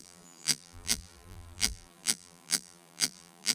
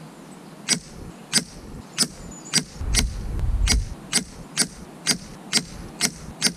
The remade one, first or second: first